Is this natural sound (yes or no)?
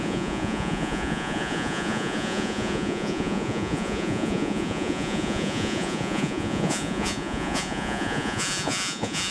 no